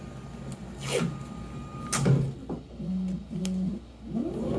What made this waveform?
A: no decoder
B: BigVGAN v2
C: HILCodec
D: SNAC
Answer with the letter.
A